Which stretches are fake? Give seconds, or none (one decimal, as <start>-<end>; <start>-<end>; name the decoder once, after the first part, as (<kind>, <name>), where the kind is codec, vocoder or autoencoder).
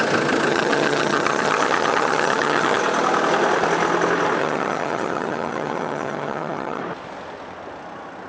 0.5-2.8 (vocoder, HiFi-GAN); 4.4-6.8